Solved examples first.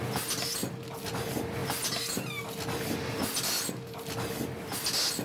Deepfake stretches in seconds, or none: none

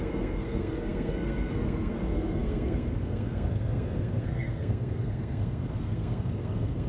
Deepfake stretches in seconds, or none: 0.0-6.9 (codec, SNAC)

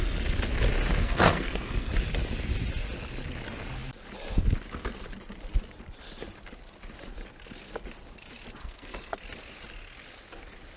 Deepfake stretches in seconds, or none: 1.0-1.9 (codec, SNAC); 8.6-9.2

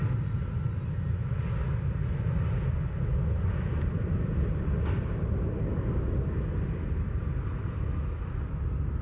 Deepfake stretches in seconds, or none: none

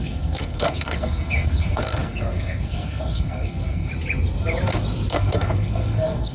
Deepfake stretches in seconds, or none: 0.0-3.9 (codec, SNAC); 5.1-6.3

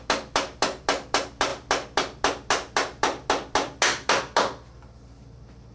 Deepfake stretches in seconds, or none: none

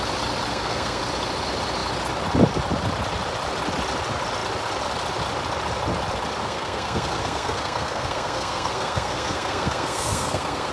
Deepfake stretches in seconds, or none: 0.5-1.0 (codec, SNAC); 6.4-10.7

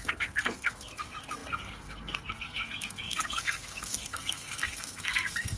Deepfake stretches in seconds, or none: 0.0-5.6 (codec, SNAC)